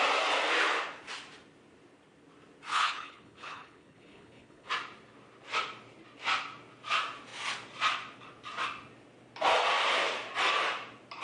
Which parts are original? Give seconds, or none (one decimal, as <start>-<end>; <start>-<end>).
0.0-2.7; 4.7-11.2